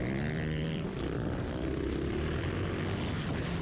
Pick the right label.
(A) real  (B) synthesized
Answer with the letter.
B